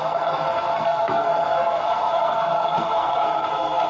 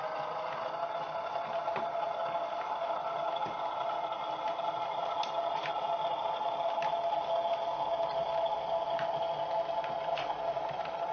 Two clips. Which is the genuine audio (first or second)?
second